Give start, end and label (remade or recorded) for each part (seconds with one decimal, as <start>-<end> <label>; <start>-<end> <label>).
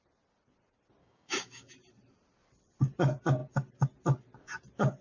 0.0-1.0 recorded; 1.0-1.7 remade; 1.7-5.0 recorded